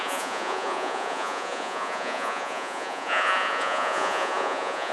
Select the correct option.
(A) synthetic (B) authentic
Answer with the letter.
A